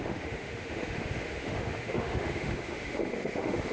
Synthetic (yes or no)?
yes